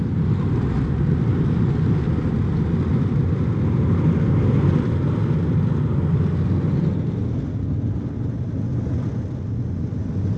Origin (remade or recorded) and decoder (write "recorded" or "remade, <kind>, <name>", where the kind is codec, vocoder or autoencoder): recorded